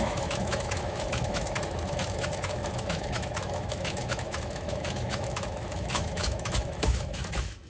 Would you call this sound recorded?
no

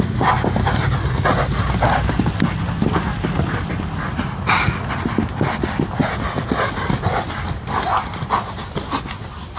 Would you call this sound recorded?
yes